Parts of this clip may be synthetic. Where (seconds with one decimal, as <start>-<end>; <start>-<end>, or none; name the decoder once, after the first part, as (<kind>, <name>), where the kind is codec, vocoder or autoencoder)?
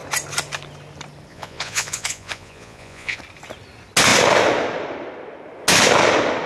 1.3-3.2 (vocoder, Vocos)